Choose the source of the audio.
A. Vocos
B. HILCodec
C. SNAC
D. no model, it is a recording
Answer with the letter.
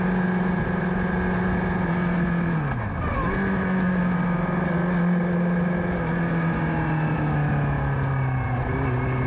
D